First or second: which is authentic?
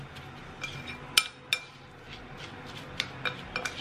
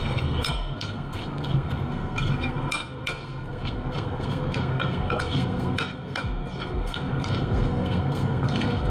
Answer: first